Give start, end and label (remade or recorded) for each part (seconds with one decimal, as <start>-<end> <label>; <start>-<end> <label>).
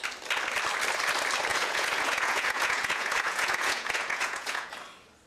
0.0-1.5 recorded; 1.5-4.7 remade; 4.7-5.3 recorded